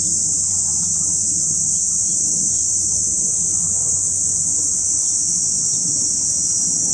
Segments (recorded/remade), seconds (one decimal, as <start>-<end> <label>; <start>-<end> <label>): 0.0-3.5 recorded; 3.5-5.6 remade; 5.6-6.9 recorded